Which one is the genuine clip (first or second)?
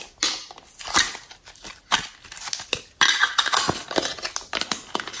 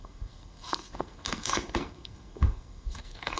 first